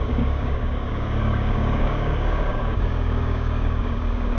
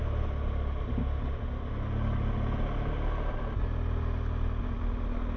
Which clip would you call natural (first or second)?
second